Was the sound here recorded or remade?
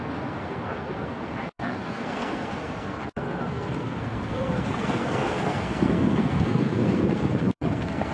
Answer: remade